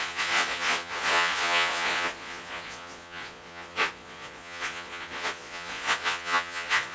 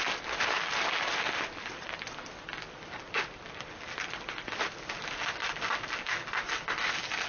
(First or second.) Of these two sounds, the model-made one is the first